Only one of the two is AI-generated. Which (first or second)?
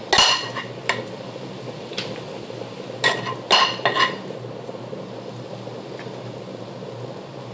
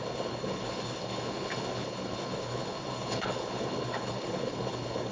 second